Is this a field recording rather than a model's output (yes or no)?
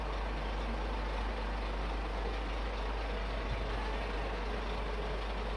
yes